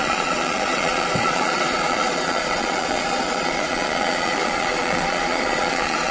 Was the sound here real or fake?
fake